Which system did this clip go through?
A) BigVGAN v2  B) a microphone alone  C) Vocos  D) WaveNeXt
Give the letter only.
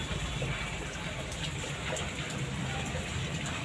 B